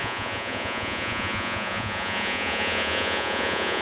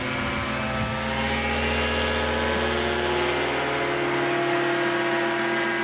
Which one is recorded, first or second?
second